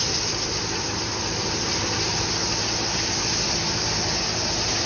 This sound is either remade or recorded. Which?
recorded